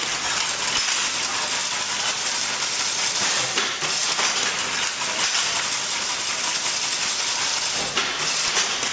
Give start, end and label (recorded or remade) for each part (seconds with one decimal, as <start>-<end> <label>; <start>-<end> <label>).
0.0-8.9 recorded